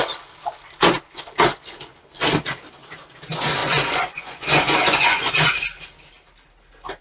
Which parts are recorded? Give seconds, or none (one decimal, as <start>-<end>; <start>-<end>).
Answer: 0.0-3.6; 5.3-7.0